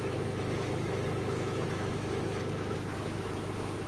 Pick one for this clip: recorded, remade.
remade